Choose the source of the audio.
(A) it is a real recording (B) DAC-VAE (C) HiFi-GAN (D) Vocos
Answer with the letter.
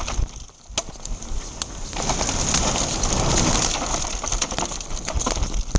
A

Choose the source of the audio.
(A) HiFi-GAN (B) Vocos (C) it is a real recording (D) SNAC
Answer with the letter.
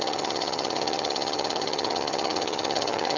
A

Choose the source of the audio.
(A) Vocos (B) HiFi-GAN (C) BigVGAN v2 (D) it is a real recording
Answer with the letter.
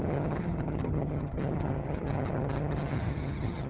B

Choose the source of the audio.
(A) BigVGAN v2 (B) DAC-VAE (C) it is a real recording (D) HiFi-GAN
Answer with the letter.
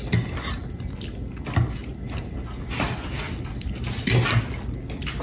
C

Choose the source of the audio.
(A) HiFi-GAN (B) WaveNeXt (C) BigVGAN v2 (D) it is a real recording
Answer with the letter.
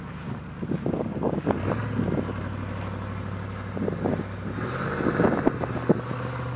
D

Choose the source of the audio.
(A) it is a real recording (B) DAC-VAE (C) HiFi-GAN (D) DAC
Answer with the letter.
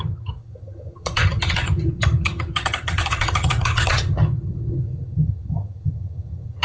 C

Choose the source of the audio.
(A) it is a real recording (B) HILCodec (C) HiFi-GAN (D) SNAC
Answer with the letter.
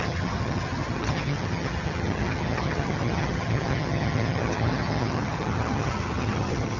C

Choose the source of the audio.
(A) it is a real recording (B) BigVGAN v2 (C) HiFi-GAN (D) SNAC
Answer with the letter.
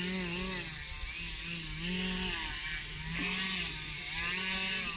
A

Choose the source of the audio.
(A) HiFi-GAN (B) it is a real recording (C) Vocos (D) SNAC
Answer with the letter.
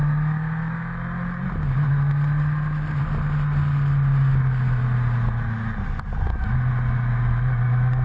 B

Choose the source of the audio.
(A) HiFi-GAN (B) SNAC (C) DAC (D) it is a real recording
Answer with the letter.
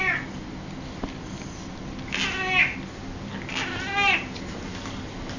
D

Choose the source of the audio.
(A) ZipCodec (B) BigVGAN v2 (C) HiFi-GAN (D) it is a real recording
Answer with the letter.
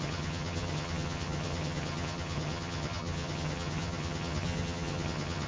C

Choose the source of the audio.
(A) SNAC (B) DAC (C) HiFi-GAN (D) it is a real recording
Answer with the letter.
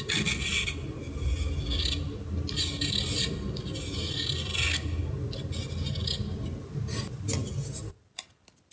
D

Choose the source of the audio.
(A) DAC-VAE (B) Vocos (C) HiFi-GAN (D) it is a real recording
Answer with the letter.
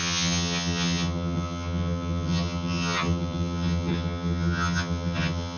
C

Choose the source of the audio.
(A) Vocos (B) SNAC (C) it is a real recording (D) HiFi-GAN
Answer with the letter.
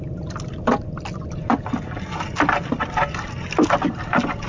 C